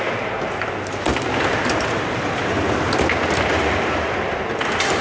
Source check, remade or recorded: recorded